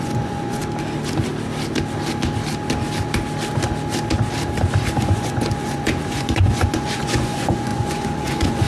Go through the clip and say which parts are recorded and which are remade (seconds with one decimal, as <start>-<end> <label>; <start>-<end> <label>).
0.0-0.6 remade; 0.6-5.0 recorded; 5.0-8.7 remade